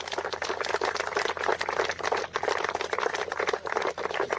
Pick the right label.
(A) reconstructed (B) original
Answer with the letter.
B